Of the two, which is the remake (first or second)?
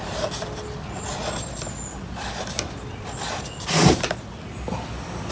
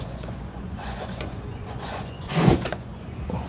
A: second